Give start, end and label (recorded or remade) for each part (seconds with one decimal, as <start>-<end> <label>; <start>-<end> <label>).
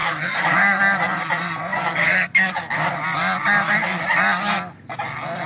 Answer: 0.0-0.8 remade; 0.8-1.7 recorded; 1.7-2.9 remade; 2.9-5.5 recorded